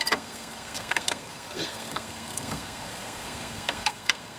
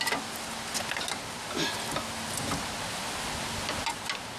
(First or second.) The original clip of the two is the second